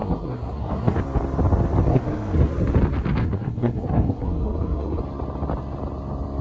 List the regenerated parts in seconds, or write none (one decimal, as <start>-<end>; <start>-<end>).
0.0-1.0; 1.9-2.5; 3.2-5.0